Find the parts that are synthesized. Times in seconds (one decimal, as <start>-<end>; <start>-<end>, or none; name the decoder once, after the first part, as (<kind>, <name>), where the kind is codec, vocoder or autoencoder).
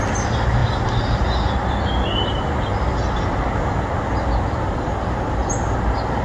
none